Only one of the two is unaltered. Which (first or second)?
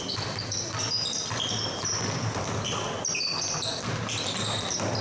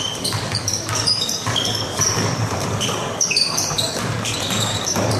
first